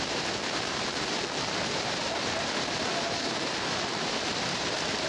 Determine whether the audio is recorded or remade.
remade